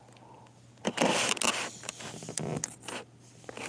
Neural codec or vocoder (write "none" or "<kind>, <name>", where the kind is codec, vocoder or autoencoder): none